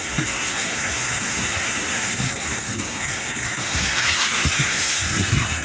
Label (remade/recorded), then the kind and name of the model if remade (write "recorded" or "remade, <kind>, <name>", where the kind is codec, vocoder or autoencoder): remade, codec, SNAC